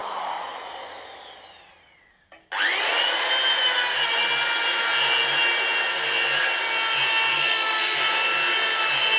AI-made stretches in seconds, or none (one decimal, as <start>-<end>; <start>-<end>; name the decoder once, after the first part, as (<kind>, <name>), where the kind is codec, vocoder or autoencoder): 7.3-8.0 (codec, SNAC)